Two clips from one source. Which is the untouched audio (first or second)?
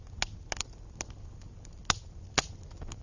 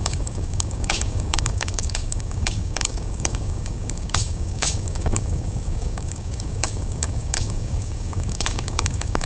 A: first